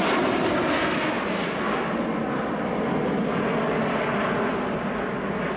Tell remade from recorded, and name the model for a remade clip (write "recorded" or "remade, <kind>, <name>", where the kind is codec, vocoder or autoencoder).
recorded